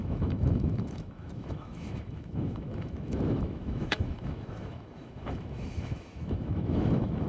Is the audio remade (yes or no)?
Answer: yes